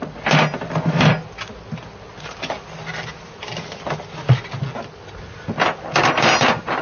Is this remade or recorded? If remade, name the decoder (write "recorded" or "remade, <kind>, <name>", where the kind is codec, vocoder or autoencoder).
recorded